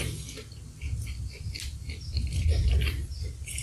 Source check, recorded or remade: recorded